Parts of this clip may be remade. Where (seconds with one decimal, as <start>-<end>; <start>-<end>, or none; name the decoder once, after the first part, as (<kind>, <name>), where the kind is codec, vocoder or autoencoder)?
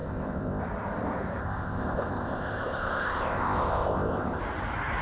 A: 0.0-0.6 (codec, ZipCodec); 1.4-4.4